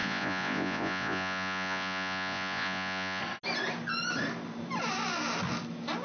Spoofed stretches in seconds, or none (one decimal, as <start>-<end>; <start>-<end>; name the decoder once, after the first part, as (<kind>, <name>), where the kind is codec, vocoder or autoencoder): 0.0-3.2 (vocoder, Vocos)